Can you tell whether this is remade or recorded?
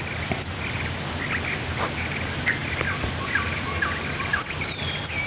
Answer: recorded